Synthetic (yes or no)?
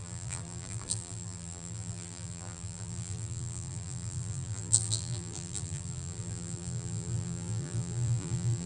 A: yes